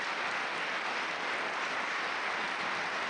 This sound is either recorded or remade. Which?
recorded